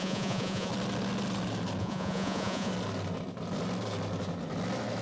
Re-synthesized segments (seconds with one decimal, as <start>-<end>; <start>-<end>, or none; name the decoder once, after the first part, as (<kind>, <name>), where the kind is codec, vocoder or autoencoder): 0.0-0.7 (vocoder, Vocos); 1.8-2.7